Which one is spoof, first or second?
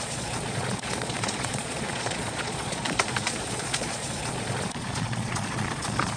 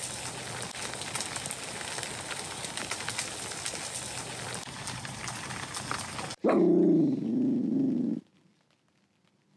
first